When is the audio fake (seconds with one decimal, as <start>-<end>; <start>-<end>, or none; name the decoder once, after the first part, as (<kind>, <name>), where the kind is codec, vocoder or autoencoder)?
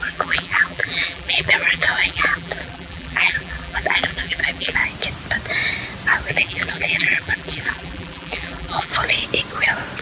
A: 0.0-4.8 (vocoder, BigVGAN v2); 6.3-8.9